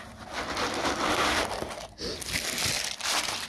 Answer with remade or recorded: recorded